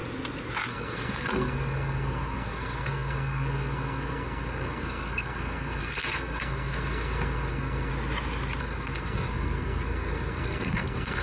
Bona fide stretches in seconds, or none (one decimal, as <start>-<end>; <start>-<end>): 0.0-0.7; 7.9-8.6